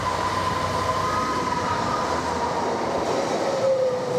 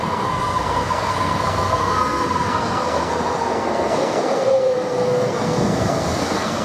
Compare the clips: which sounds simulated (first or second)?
second